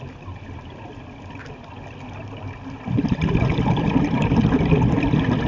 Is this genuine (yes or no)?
yes